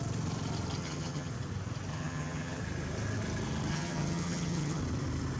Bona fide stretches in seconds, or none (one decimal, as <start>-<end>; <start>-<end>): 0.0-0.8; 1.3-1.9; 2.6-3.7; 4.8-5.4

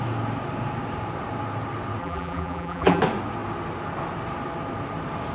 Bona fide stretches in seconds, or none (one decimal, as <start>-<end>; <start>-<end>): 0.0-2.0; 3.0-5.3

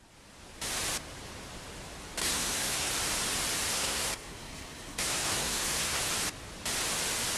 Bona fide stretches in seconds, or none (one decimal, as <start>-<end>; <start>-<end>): 0.0-2.2; 2.9-3.7; 6.0-7.4

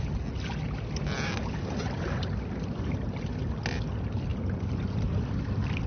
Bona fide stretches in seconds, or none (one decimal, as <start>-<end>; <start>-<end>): 0.0-5.9